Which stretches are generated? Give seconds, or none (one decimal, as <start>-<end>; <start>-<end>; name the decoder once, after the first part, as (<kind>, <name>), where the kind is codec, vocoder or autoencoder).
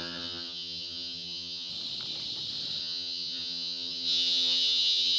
0.0-1.7 (vocoder, HiFi-GAN); 2.8-5.2